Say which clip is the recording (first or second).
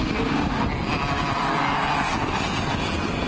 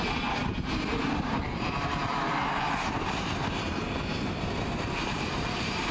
first